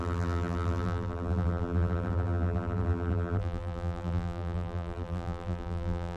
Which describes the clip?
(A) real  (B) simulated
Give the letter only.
B